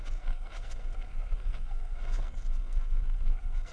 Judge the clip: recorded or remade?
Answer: remade